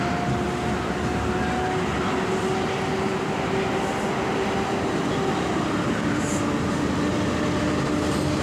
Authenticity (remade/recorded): recorded